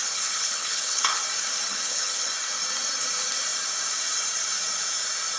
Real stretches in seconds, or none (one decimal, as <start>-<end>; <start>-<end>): 1.2-1.7; 2.3-5.4